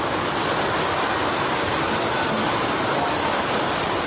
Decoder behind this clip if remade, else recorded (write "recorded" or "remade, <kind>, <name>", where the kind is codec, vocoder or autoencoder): recorded